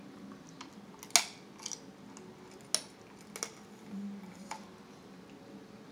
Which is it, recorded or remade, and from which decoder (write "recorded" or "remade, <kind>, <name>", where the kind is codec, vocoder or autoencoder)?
recorded